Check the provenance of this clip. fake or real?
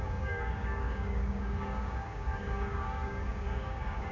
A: fake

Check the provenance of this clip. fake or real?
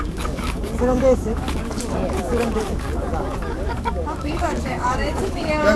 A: fake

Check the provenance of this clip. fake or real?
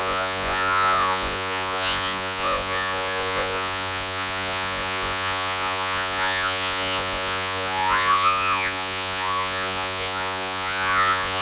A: fake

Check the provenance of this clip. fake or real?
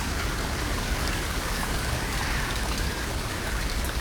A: fake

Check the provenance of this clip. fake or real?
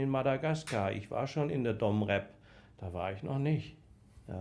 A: real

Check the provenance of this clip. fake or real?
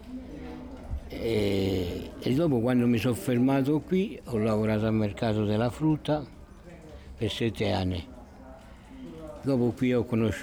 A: real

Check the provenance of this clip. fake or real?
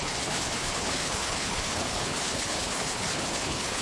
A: fake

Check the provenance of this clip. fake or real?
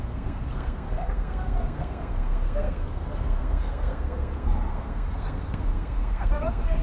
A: fake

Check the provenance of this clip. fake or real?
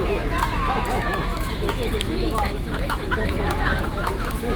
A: fake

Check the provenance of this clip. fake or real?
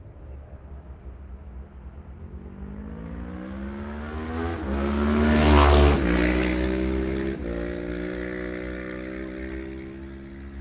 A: real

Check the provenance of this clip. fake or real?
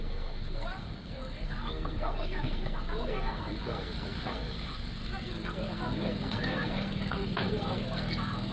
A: fake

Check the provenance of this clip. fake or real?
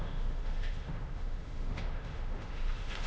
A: fake